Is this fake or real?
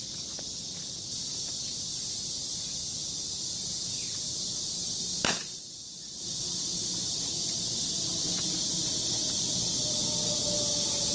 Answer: real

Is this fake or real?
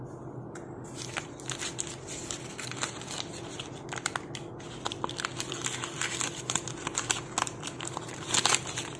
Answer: real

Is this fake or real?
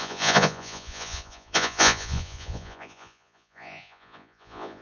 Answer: fake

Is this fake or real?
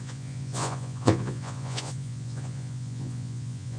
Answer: fake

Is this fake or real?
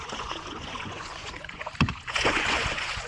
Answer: fake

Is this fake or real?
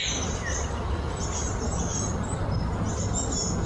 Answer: real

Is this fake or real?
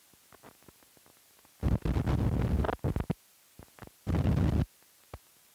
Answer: real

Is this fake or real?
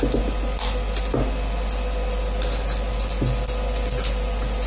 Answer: real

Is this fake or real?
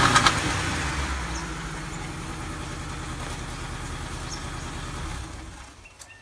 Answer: real